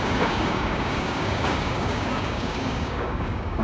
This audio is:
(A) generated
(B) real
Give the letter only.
A